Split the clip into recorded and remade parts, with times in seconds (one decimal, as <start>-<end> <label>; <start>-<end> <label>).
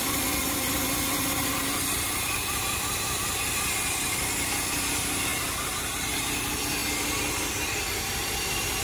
0.0-8.8 recorded